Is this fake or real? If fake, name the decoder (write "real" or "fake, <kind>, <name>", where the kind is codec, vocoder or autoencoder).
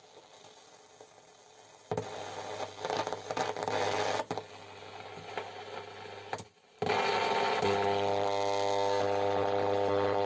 real